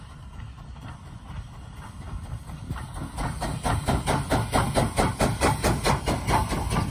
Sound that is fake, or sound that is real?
real